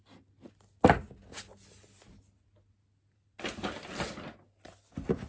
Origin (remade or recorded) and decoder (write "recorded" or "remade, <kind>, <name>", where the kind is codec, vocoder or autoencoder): recorded